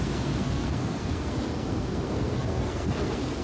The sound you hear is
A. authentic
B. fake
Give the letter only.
B